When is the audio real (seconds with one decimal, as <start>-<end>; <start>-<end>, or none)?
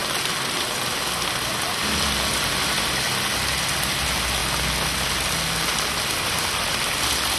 0.6-7.4